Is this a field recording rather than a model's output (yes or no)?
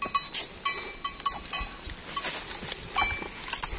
yes